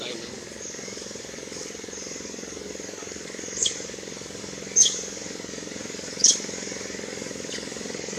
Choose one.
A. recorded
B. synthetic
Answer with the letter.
B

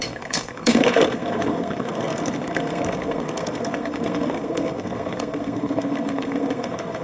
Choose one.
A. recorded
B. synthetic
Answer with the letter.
B